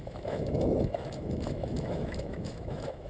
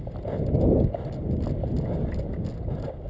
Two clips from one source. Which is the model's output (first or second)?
first